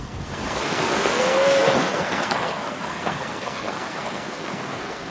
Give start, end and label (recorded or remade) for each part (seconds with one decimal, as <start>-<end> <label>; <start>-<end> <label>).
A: 0.0-5.1 remade